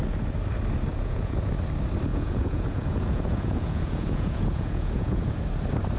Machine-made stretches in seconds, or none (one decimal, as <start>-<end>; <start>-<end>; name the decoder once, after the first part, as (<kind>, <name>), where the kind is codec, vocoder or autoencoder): 0.9-1.5 (vocoder, Vocos); 2.1-5.4